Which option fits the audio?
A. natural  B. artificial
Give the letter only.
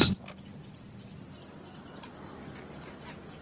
B